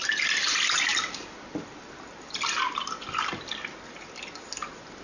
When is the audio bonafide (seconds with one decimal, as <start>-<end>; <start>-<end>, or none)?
0.0-5.0